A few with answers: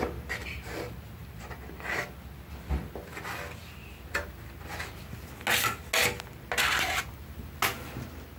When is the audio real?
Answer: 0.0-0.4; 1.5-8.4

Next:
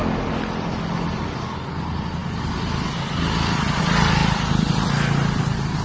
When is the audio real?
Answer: 0.0-4.2; 4.9-5.8

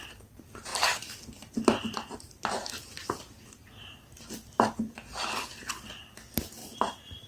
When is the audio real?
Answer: 0.0-6.6

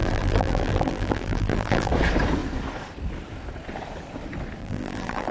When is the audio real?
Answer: 1.9-4.6